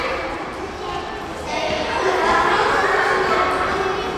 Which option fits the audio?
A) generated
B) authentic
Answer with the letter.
B